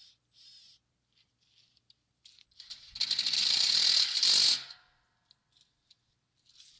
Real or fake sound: real